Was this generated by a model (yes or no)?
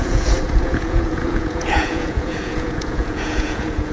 yes